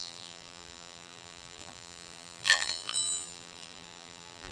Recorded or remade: remade